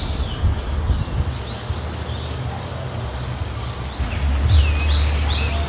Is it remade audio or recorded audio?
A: recorded